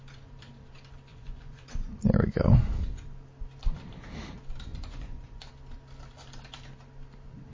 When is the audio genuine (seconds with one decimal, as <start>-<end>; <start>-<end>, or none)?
0.0-1.1; 1.9-4.7; 5.5-7.5